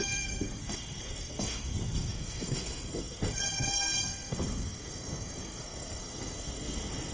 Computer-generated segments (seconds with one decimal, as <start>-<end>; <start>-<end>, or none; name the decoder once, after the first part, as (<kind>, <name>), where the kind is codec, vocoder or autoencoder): 0.0-7.1 (codec, SNAC)